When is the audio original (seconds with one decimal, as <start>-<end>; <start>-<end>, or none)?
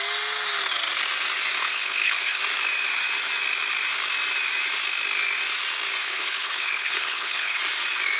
0.0-1.6; 2.4-6.0; 7.6-8.2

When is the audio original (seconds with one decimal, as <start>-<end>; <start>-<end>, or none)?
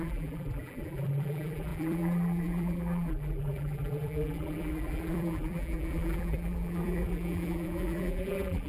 none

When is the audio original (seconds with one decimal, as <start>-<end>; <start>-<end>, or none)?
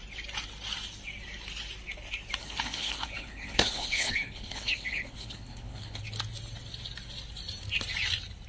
0.0-2.4; 6.0-8.5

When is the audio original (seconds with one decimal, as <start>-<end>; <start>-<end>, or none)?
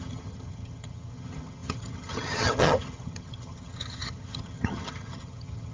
none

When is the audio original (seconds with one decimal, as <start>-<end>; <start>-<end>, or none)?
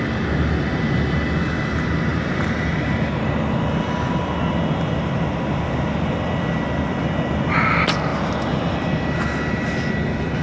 0.0-10.4